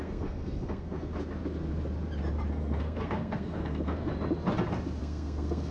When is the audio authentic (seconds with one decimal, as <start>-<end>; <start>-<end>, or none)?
1.1-2.5; 4.1-5.0